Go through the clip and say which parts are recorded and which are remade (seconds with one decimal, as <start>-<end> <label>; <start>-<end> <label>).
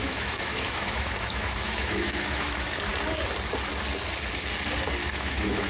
0.0-2.9 remade; 2.9-5.1 recorded; 5.1-5.7 remade